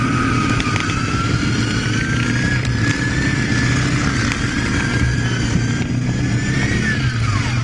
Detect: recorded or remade recorded